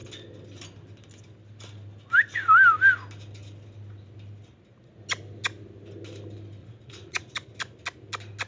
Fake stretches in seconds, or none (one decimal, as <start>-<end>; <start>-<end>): 6.6-7.2

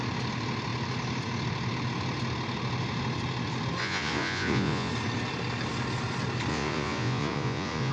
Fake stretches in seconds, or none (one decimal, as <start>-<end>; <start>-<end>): 3.8-4.9; 6.5-7.9

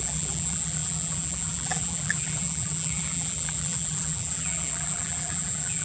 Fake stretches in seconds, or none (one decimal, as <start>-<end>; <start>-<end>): 0.0-5.8

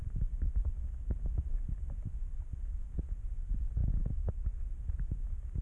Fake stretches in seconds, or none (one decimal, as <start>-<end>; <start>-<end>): none

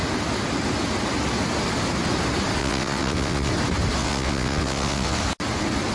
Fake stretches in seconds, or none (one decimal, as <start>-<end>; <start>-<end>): 2.6-3.5; 4.0-5.2

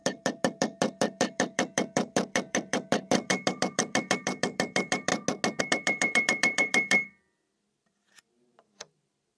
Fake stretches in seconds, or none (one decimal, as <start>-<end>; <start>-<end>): 0.0-5.1; 5.6-9.4

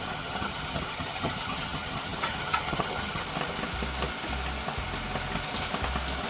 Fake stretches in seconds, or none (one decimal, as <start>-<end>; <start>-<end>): 0.0-3.2

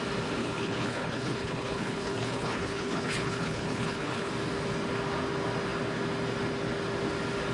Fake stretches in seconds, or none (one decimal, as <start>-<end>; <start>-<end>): 0.4-4.3